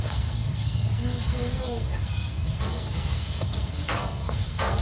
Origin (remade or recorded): remade